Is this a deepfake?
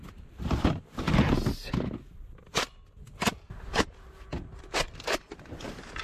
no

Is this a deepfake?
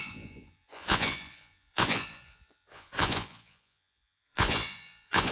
yes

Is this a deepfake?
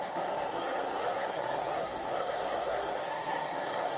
yes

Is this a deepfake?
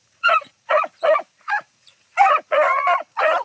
yes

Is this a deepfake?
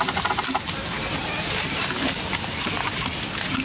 no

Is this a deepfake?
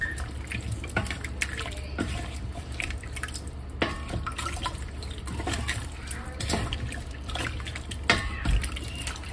yes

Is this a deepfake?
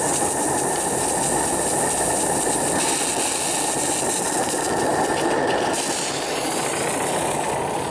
no